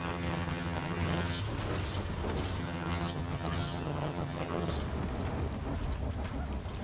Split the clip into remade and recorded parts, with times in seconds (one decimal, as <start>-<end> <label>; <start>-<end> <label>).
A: 0.0-1.4 remade; 1.4-2.6 recorded; 2.6-4.7 remade; 4.7-6.8 recorded